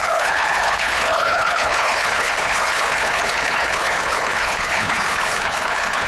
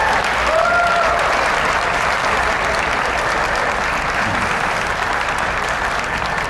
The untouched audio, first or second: second